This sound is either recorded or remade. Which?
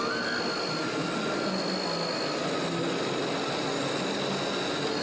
recorded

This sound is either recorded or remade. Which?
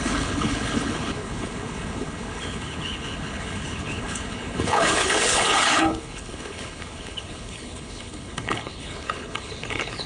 remade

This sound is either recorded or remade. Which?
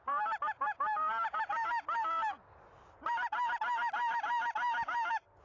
recorded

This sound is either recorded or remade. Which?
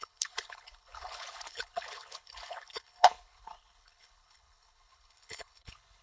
remade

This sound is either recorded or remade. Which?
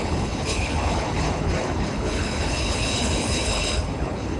remade